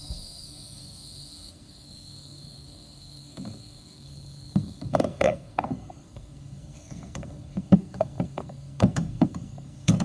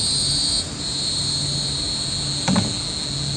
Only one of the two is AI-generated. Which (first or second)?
first